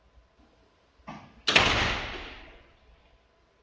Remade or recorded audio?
recorded